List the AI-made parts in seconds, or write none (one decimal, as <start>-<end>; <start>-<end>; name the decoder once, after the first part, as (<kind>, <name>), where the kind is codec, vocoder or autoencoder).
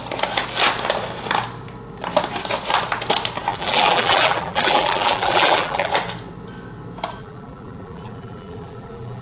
3.5-5.9 (vocoder, BigVGAN v2); 7.2-9.2